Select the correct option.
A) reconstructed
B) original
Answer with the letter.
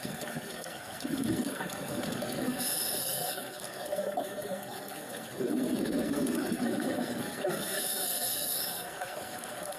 A